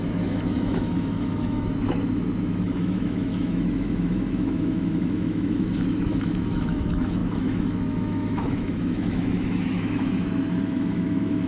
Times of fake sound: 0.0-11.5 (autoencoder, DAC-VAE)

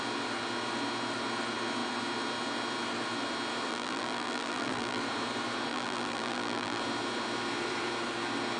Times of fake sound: 3.7-5.0 (vocoder, BigVGAN v2); 5.7-6.8

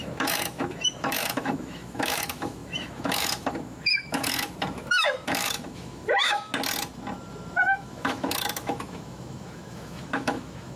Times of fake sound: 0.0-6.5 (autoencoder, DAC-VAE); 7.6-10.8

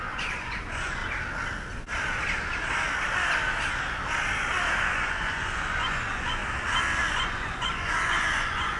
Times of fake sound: 0.0-1.0 (vocoder, Vocos); 4.8-6.4; 7.1-8.8

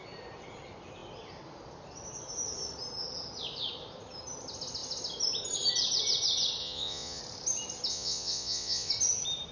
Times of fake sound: 6.6-7.2 (vocoder, Vocos); 7.9-8.9

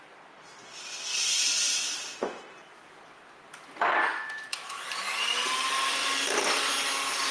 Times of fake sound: 4.1-4.8 (autoencoder, DAC-VAE)

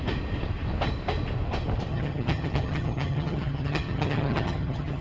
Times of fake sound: 1.9-5.0 (vocoder, HiFi-GAN)